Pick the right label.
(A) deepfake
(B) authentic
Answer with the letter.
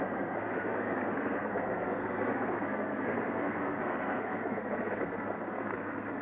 A